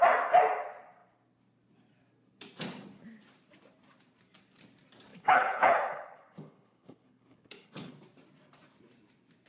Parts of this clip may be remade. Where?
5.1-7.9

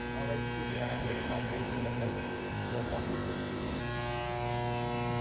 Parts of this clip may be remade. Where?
0.7-3.8

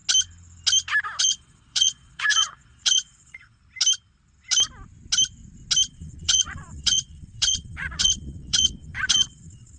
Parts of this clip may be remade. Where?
1.2-3.6; 5.9-9.8

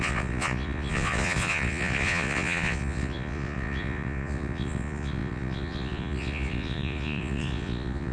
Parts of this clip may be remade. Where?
0.0-8.1